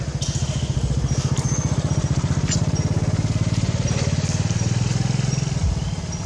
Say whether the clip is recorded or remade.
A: recorded